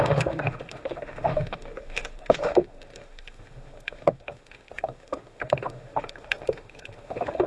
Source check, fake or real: fake